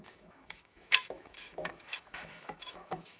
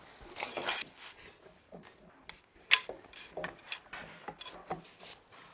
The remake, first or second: first